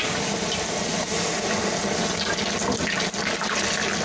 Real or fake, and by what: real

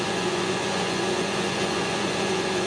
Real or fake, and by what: fake, vocoder, Vocos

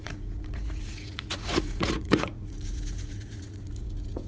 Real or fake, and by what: fake, vocoder, Vocos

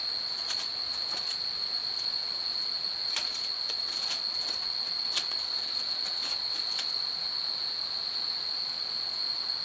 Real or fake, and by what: fake, vocoder, Vocos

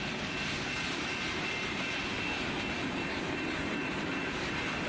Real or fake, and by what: real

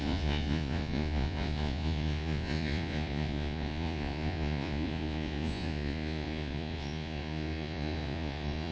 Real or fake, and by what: fake, vocoder, Vocos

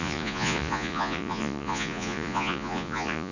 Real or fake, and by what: fake, vocoder, Vocos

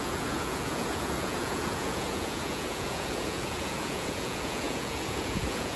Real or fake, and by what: fake, vocoder, Vocos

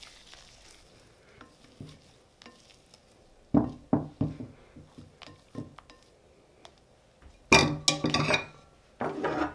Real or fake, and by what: real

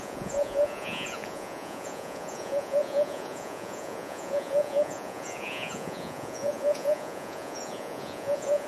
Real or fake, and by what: fake, vocoder, Vocos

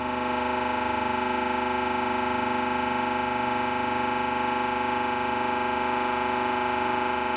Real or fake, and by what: real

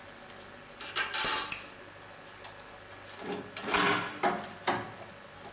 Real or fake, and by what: real